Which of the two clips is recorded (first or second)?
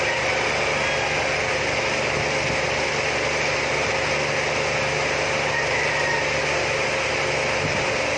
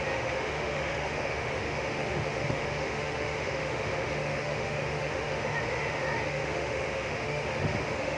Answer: first